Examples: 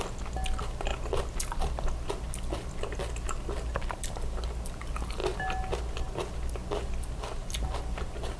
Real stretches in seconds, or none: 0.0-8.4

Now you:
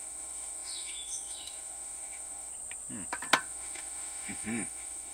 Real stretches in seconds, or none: 2.5-3.4

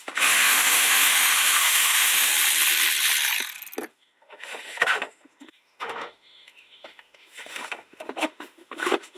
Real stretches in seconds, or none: 2.3-3.9